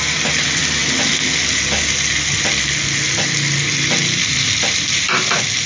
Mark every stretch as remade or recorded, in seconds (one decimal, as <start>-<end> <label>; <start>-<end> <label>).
0.0-0.8 remade; 0.8-4.2 recorded; 4.2-5.7 remade